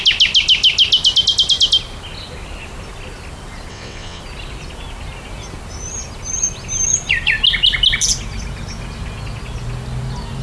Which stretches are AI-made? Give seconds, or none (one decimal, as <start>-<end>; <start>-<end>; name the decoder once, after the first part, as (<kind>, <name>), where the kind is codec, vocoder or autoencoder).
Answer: 3.7-4.2 (vocoder, WaveNeXt)